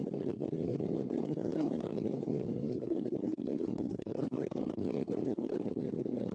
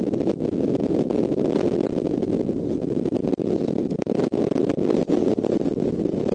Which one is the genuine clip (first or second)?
second